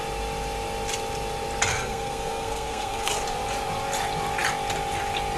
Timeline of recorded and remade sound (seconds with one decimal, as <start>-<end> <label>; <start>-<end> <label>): 0.0-1.7 recorded; 1.7-3.1 remade; 3.1-5.4 recorded